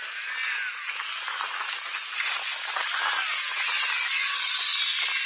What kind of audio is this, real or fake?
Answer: real